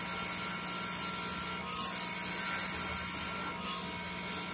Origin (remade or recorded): recorded